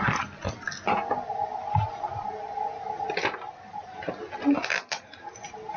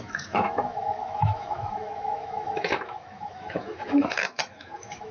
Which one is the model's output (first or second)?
second